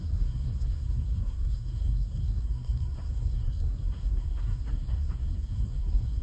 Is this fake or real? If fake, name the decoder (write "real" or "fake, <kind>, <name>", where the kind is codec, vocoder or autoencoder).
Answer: fake, codec, SNAC